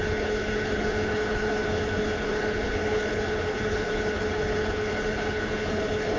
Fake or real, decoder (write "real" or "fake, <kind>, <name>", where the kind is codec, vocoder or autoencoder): fake, codec, HILCodec